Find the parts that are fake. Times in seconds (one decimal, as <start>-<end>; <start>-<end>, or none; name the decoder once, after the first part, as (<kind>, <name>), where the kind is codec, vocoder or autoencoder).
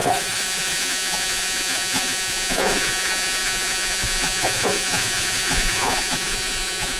0.0-7.0 (vocoder, Vocos)